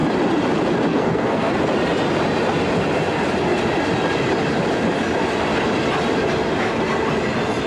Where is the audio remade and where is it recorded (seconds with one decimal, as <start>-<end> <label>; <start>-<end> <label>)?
0.0-0.9 recorded; 0.9-1.5 remade; 1.5-7.7 recorded